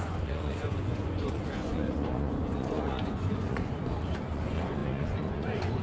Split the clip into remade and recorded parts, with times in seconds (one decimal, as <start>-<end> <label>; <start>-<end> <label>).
0.0-5.8 remade